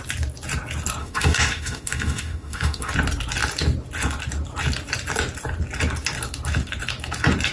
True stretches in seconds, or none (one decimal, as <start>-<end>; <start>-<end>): 0.0-1.0; 2.9-7.5

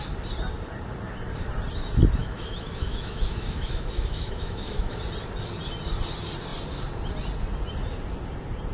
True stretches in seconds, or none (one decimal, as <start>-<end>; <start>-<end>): 0.0-2.2; 5.0-8.7

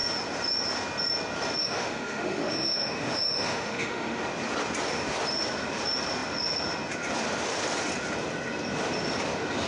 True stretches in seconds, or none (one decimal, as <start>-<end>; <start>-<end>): 0.0-1.6; 4.2-9.7